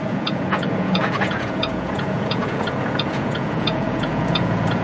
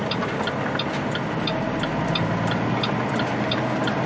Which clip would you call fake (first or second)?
first